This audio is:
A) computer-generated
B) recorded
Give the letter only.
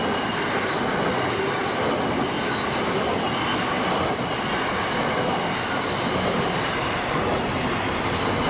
B